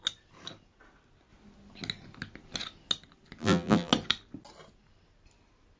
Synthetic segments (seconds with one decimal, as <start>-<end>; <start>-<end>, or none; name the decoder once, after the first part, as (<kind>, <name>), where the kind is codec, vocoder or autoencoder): 3.4-3.9 (vocoder, BigVGAN v2)